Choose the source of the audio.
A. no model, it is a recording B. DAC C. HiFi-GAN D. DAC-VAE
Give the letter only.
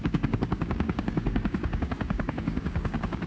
B